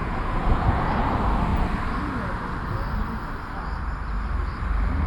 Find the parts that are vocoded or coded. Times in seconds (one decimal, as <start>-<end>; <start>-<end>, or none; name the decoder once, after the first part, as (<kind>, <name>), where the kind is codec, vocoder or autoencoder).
0.0-0.9 (vocoder, Vocos)